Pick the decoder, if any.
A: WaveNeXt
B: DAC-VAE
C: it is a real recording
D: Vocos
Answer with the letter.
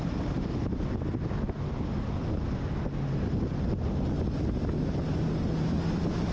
C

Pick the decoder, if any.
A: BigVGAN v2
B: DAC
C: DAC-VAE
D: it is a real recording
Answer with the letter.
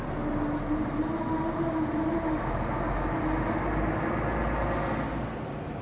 D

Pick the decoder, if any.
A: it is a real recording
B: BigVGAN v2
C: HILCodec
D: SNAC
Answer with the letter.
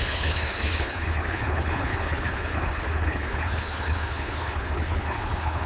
C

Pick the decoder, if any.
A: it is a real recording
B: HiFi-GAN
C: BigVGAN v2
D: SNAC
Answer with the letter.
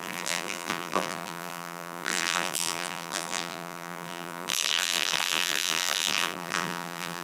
C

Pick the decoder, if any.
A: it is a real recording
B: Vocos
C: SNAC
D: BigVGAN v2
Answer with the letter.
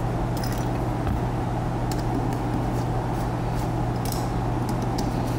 A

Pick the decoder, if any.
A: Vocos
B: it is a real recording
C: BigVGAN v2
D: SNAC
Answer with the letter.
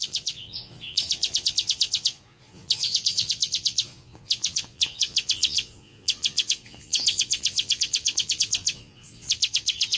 A